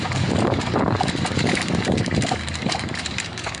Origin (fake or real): fake